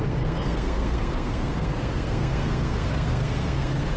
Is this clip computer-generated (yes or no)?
yes